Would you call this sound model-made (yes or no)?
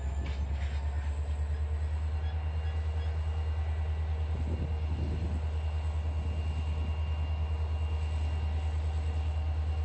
no